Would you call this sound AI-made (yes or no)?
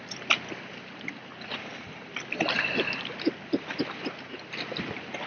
no